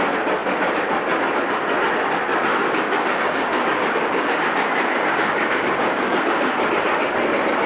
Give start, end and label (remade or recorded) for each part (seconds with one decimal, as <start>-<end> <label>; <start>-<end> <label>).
0.0-2.5 recorded; 2.5-6.7 remade; 6.7-7.7 recorded